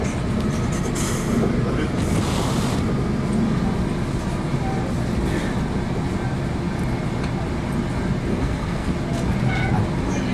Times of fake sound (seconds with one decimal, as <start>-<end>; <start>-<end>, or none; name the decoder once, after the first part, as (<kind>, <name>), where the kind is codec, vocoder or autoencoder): 8.3-8.9 (codec, SNAC)